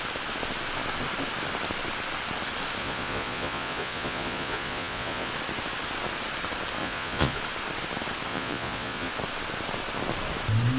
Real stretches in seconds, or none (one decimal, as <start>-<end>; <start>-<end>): 0.0-2.8; 5.3-6.8; 7.4-8.3; 9.1-10.8